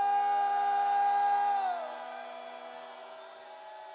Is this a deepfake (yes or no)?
no